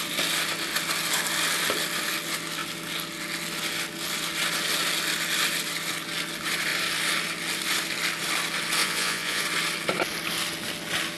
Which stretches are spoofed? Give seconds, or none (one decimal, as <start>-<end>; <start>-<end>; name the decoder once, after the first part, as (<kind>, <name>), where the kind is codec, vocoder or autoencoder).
8.8-9.4 (vocoder, Vocos)